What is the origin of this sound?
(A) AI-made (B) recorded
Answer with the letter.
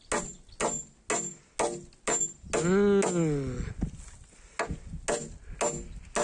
B